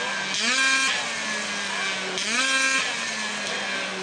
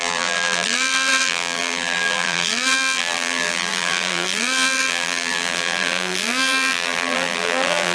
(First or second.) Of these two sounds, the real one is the first